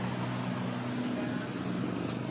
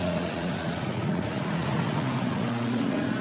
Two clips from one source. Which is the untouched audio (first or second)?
first